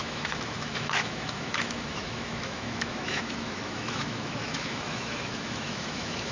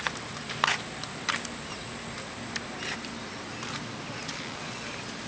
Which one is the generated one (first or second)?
first